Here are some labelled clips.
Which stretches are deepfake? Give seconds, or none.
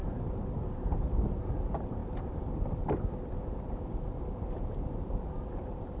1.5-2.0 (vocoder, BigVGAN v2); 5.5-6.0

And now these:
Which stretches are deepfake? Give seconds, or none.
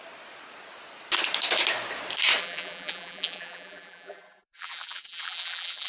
2.4-5.9 (vocoder, BigVGAN v2)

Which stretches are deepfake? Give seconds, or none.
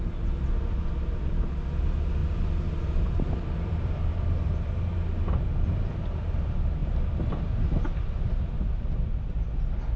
2.2-4.9 (vocoder, BigVGAN v2); 6.8-9.5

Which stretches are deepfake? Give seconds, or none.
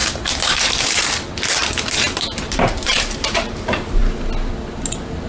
0.0-4.0 (vocoder, BigVGAN v2)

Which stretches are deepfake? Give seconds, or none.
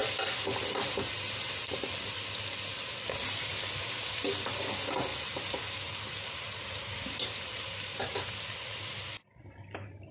5.1-8.3 (vocoder, BigVGAN v2)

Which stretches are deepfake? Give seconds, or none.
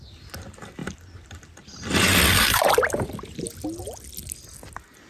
0.8-3.4 (vocoder, BigVGAN v2)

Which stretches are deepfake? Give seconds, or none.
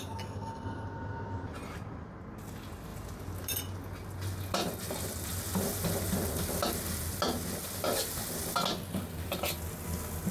2.9-3.6 (vocoder, BigVGAN v2)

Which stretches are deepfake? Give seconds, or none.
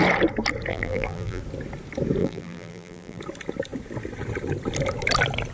0.7-1.4 (vocoder, BigVGAN v2); 2.2-3.2